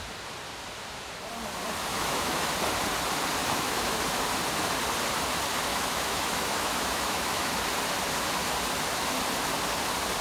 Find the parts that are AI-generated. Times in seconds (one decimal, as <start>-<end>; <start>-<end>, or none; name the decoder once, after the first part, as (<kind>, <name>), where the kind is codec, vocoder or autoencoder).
1.9-2.5 (autoencoder, DAC-VAE); 3.4-4.0; 5.7-7.5

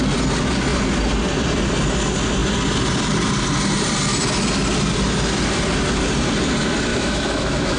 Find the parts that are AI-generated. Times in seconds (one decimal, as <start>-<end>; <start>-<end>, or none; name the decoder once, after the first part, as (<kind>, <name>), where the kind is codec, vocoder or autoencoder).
6.9-7.8 (autoencoder, DAC-VAE)

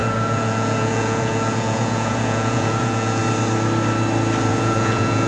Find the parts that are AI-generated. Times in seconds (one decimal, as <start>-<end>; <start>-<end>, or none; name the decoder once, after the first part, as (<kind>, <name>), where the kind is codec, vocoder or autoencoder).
0.0-3.2 (vocoder, Vocos); 4.5-5.3

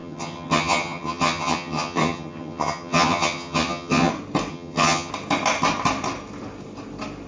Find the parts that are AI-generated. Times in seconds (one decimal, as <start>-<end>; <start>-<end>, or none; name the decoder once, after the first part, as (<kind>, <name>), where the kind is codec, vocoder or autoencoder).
0.0-4.1 (vocoder, HiFi-GAN); 4.5-5.1